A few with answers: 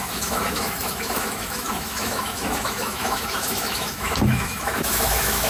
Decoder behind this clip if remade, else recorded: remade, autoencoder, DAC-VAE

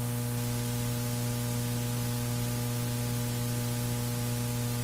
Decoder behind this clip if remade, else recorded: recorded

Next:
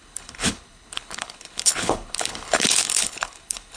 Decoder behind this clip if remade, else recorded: remade, codec, HILCodec